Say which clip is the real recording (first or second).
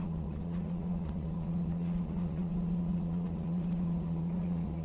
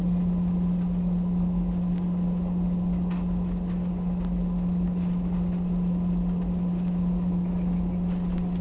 second